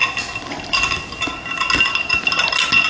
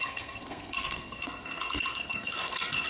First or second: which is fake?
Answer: second